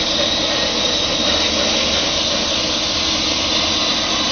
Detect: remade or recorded recorded